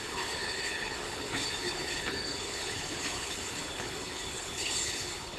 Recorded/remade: remade